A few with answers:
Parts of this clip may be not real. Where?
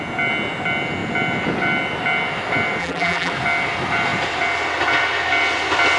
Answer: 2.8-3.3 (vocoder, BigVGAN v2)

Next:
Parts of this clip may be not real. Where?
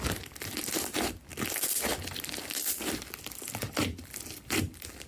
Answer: 3.8-4.6 (vocoder, BigVGAN v2)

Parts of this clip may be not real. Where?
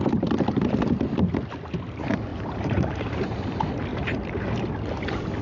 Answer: 2.3-3.4 (vocoder, BigVGAN v2); 3.9-4.5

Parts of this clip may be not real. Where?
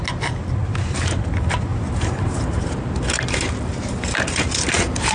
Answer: 0.6-1.2 (vocoder, BigVGAN v2); 1.7-5.1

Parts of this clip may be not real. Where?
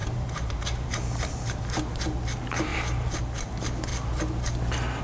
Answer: 0.0-1.6 (vocoder, BigVGAN v2); 2.7-3.2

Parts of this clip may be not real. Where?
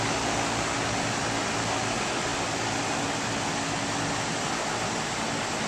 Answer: none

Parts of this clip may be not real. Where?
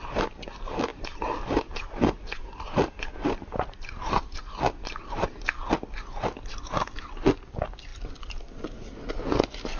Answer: 0.9-4.4 (vocoder, BigVGAN v2)